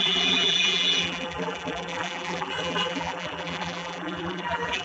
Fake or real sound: fake